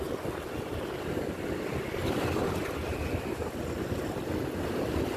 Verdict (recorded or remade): recorded